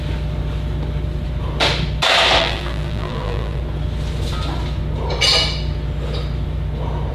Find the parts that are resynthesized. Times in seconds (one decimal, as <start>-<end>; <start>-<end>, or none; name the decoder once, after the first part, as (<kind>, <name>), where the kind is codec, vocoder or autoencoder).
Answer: 2.4-3.6 (vocoder, BigVGAN v2)

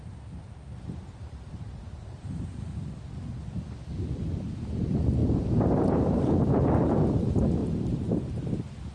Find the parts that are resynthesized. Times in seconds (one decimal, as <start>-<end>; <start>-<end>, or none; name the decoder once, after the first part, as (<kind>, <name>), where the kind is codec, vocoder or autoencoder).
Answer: 0.4-2.3 (vocoder, BigVGAN v2); 5.2-6.3; 7.6-8.4

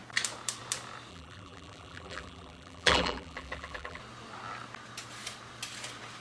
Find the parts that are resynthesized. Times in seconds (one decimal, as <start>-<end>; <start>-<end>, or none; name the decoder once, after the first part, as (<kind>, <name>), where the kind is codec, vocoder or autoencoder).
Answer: 1.1-4.0 (vocoder, BigVGAN v2)

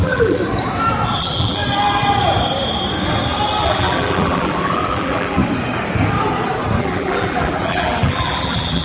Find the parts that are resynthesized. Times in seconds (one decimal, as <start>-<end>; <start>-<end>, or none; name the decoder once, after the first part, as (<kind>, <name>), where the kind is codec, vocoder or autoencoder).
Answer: 0.0-0.4 (vocoder, BigVGAN v2); 1.2-1.6; 3.6-5.4; 6.8-8.8

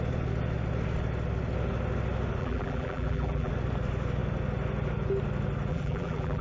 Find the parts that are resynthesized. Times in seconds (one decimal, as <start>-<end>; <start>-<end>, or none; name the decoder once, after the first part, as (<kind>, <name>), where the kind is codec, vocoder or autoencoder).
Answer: 2.4-3.5 (vocoder, BigVGAN v2); 5.7-6.4

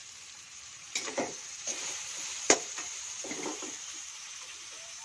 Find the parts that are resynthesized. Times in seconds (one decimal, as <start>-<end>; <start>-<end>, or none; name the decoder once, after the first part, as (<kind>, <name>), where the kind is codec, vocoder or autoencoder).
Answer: 0.0-5.0 (vocoder, BigVGAN v2)

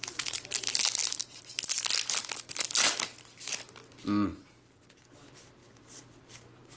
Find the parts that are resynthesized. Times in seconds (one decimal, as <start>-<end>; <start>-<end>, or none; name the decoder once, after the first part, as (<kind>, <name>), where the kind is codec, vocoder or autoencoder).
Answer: 4.3-5.1 (vocoder, BigVGAN v2); 5.6-6.8